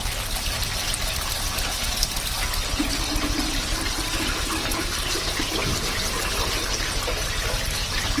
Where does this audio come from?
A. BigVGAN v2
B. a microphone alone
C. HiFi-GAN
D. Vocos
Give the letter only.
B